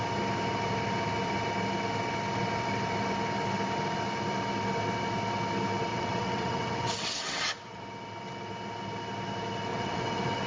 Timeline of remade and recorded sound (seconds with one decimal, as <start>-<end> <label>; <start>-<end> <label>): 0.0-5.9 recorded; 5.9-7.8 remade; 7.8-9.7 recorded; 9.7-10.5 remade